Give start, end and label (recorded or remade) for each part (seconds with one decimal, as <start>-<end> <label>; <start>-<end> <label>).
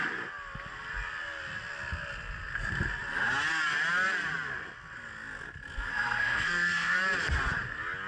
0.0-5.9 recorded; 5.9-7.0 remade; 7.0-8.1 recorded